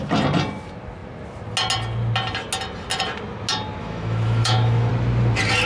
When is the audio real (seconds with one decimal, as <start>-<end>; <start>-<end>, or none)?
0.0-3.8; 4.9-5.7